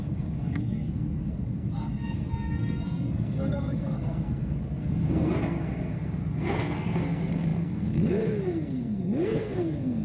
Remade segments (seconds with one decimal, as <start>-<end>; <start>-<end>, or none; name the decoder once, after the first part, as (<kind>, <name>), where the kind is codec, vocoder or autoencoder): 0.0-10.0 (codec, SNAC)